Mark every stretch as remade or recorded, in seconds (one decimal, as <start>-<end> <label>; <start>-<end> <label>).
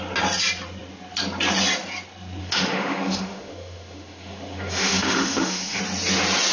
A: 0.0-2.4 recorded; 2.4-5.8 remade; 5.8-6.5 recorded